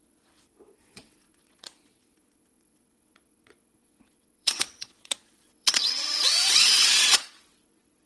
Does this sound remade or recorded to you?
remade